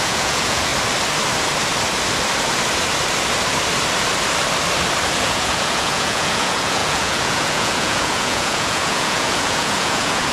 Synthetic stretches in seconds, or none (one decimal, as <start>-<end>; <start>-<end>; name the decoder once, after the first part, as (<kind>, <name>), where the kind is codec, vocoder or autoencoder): 0.0-0.7 (vocoder, Vocos); 5.2-10.3